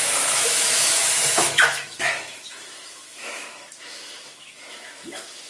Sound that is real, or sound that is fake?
fake